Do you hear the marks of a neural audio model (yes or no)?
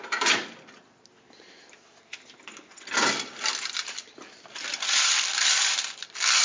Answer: no